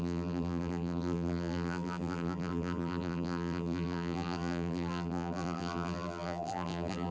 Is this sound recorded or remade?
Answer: remade